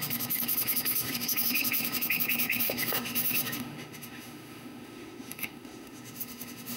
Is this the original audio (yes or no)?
no